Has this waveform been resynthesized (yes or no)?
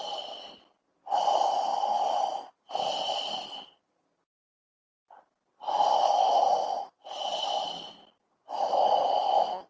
no